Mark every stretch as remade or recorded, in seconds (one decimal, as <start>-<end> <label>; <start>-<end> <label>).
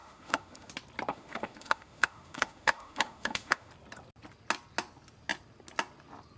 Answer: 0.0-0.7 remade; 0.7-1.1 recorded; 1.1-3.7 remade; 3.7-6.4 recorded